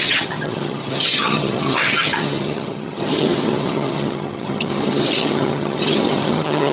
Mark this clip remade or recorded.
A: remade